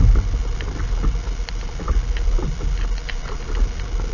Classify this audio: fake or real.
real